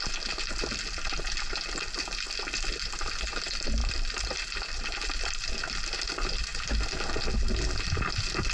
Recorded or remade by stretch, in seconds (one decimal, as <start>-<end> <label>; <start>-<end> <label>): 0.0-3.8 recorded; 3.8-5.5 remade; 5.5-8.5 recorded